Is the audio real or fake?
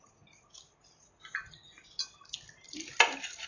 real